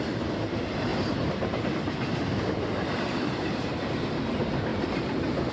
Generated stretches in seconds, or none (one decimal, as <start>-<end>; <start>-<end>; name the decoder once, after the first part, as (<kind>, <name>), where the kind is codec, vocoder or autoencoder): 0.9-4.2 (vocoder, BigVGAN v2); 4.7-5.5